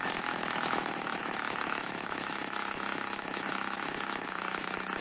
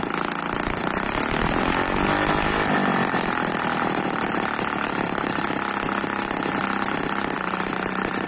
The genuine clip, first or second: second